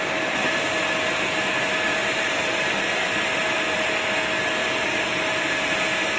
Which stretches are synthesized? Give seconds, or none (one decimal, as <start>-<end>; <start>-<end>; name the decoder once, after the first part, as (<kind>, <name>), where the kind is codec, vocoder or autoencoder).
2.0-3.9 (vocoder, BigVGAN v2); 4.6-5.5